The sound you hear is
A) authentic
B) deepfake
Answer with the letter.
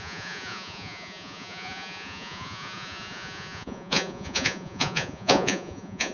B